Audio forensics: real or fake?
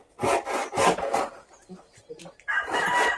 real